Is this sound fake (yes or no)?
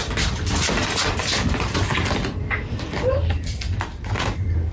no